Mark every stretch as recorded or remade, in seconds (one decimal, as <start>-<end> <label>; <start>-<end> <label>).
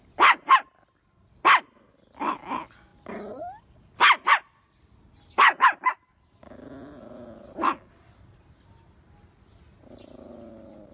0.0-10.9 recorded